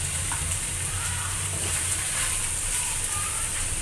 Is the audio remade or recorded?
remade